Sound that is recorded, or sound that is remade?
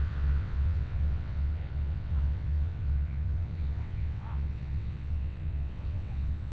remade